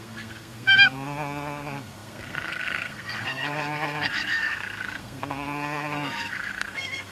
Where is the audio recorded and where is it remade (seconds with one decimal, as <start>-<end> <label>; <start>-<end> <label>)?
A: 0.0-7.1 remade